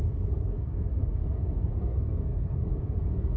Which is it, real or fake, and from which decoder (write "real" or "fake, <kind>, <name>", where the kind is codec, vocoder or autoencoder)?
fake, codec, SNAC